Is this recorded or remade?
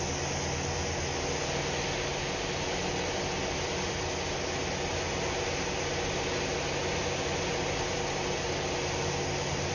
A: recorded